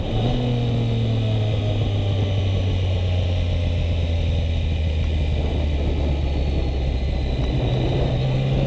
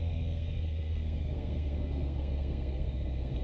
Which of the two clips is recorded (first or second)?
first